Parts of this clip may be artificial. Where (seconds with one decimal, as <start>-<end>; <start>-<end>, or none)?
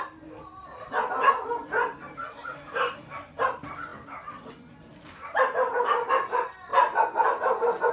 none